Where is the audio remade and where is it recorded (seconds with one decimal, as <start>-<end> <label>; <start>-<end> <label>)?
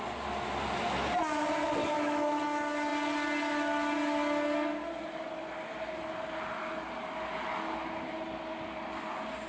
0.0-1.8 recorded; 1.8-2.4 remade; 2.4-9.5 recorded